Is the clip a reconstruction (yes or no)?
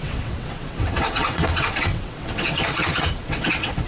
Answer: yes